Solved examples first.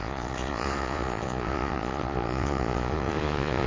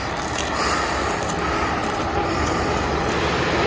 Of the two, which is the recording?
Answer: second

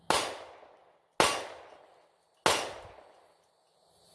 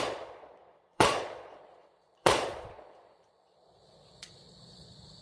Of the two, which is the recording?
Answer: first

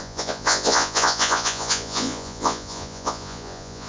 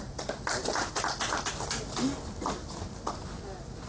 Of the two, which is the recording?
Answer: second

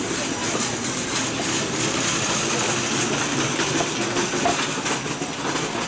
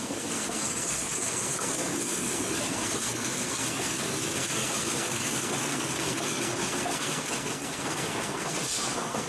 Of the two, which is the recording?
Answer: first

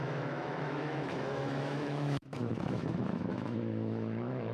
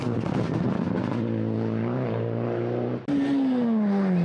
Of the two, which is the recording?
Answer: second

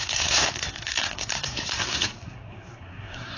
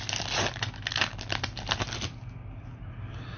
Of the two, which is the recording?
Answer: second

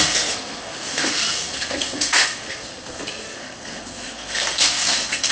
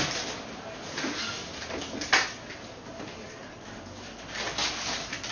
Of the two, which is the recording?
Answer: second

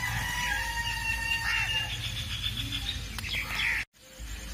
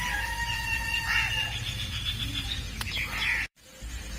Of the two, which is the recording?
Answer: first